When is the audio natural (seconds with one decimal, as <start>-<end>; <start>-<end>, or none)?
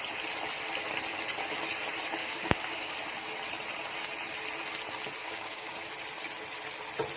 0.0-2.2; 2.9-5.2; 5.7-7.2